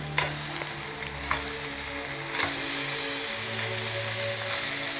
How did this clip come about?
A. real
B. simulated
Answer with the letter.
A